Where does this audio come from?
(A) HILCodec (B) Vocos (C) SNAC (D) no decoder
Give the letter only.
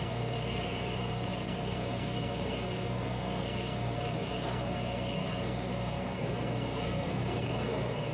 C